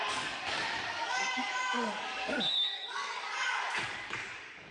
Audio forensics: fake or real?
fake